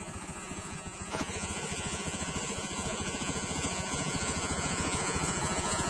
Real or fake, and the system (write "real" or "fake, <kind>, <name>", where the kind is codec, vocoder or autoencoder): fake, vocoder, Vocos